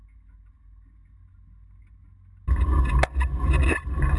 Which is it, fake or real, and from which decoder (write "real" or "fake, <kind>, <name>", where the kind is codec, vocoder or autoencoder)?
real